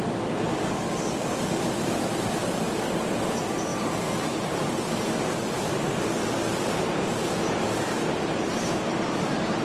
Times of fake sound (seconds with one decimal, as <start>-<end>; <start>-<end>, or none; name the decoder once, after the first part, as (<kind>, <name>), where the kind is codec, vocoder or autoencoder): 3.7-6.0 (vocoder, BigVGAN v2)